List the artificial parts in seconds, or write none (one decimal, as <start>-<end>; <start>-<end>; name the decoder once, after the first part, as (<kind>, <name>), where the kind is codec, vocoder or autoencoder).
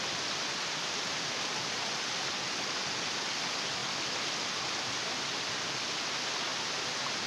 none